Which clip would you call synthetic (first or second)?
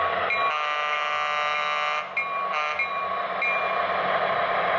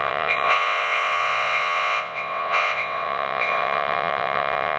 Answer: second